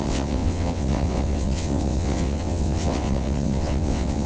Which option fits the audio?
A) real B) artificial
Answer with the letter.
B